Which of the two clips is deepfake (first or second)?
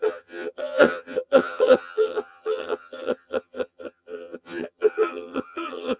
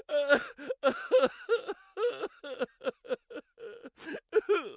first